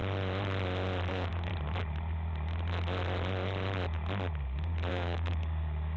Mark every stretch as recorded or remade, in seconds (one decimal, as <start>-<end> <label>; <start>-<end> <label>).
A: 0.0-1.1 recorded; 1.1-1.5 remade; 1.5-4.9 recorded; 4.9-6.0 remade